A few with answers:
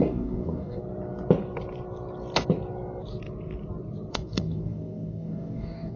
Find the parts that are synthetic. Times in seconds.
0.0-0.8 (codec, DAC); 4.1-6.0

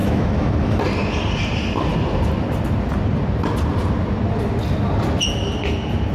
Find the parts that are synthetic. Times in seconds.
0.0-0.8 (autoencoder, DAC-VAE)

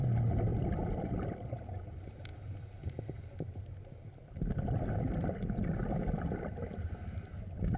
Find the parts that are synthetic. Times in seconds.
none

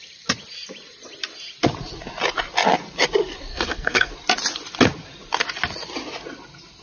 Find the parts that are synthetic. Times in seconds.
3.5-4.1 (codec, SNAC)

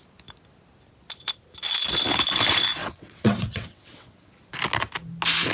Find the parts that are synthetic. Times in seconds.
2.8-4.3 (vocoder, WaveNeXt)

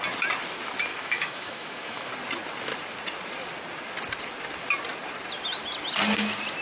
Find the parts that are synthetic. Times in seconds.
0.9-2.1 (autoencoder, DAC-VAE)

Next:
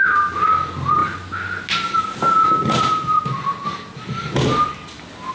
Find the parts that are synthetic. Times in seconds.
none